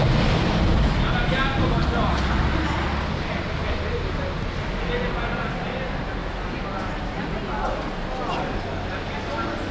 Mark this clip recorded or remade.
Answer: recorded